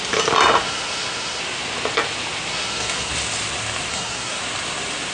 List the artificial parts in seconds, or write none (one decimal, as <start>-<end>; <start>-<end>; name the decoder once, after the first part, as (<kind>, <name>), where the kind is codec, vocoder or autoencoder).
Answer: 0.6-1.4 (codec, SNAC); 2.5-3.1; 3.9-4.4